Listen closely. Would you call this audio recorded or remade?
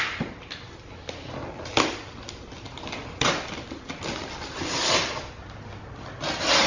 recorded